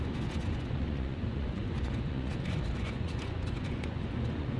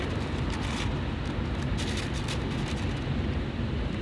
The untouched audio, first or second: second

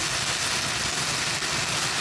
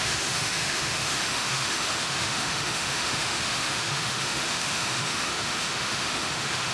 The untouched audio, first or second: first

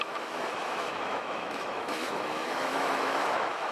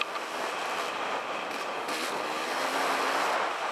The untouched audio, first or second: second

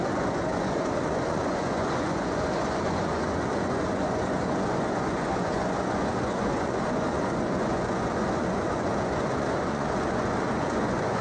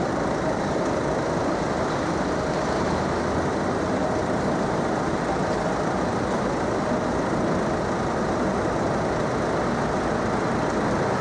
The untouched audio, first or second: second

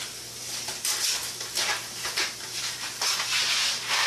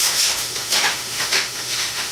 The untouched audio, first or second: first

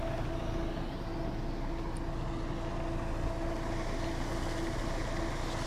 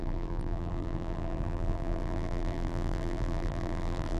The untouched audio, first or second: first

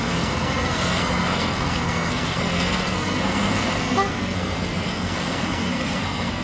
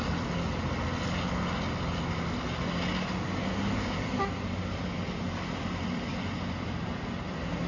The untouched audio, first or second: second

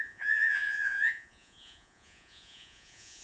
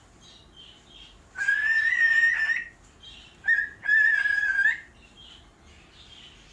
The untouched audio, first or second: second